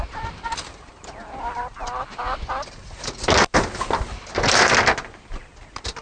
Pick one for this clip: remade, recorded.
recorded